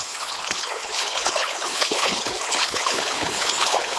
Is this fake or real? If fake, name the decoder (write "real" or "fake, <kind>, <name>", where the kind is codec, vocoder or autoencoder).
fake, codec, HILCodec